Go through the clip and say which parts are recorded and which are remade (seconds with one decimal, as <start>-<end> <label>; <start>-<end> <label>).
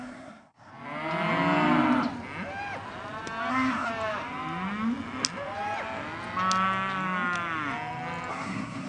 0.0-0.7 remade; 0.7-3.5 recorded; 3.5-3.9 remade; 3.9-8.3 recorded; 8.3-8.9 remade